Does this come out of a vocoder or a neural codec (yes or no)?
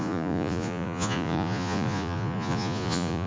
yes